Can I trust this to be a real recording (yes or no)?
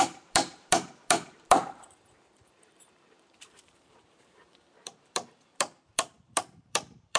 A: no